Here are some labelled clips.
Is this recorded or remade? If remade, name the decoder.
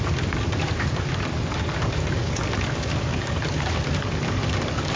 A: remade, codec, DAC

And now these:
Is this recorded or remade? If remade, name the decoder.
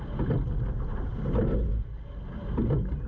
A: recorded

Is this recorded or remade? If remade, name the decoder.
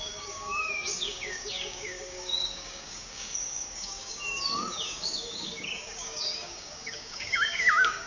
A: remade, codec, DAC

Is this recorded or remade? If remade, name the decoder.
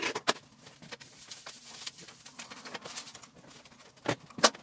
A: recorded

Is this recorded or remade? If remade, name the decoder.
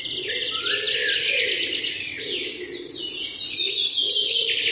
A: recorded